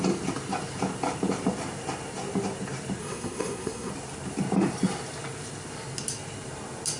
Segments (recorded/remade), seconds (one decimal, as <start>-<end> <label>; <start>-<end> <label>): 0.0-3.0 recorded; 3.0-3.9 remade; 3.9-7.0 recorded